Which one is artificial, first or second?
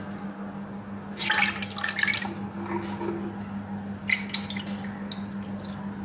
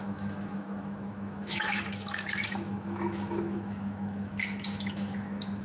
second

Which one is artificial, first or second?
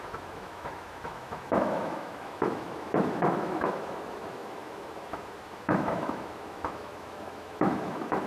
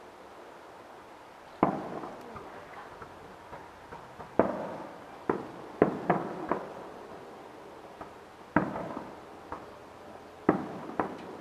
first